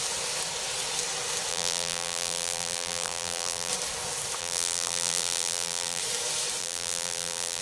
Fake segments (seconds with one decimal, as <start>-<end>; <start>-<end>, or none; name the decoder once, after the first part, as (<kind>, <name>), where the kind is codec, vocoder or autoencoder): 1.5-3.7 (vocoder, BigVGAN v2); 4.4-6.0; 6.6-7.6

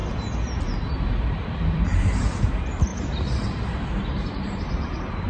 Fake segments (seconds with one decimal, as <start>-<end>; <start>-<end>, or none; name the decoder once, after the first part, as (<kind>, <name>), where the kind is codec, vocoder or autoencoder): 0.9-2.9 (vocoder, BigVGAN v2); 4.0-5.3

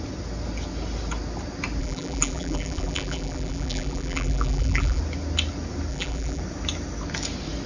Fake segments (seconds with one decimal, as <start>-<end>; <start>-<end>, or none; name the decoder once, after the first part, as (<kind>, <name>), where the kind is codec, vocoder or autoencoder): 1.8-5.0 (vocoder, BigVGAN v2); 5.9-6.4